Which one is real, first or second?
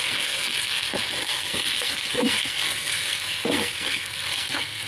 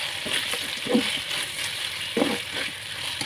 second